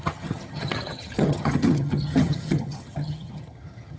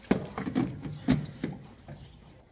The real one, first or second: second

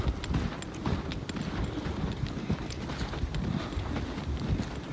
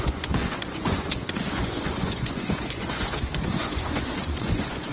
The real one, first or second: first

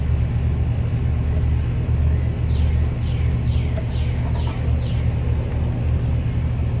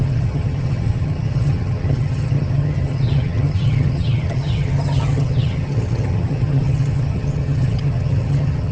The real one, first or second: first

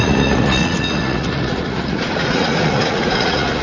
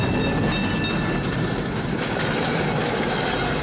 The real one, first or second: second